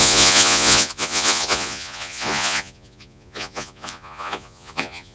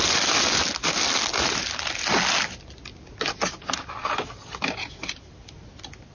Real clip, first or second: second